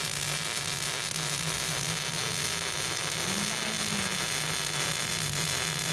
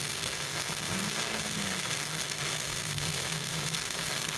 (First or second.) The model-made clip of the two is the second